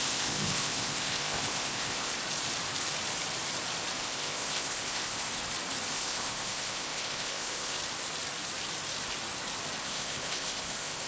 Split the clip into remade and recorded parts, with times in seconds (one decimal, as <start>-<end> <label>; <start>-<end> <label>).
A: 0.0-2.1 remade; 2.1-4.0 recorded; 4.0-5.3 remade; 5.3-5.9 recorded; 5.9-7.8 remade; 7.8-9.8 recorded; 9.8-11.1 remade